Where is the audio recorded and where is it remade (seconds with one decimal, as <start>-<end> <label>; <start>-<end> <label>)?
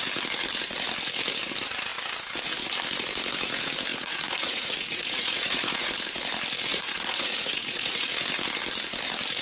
0.0-3.9 recorded; 3.9-5.9 remade; 5.9-6.7 recorded; 6.7-8.0 remade; 8.0-9.4 recorded